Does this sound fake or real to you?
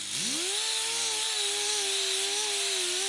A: real